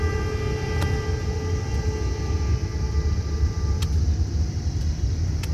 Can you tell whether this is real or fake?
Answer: real